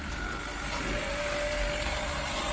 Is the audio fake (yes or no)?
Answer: no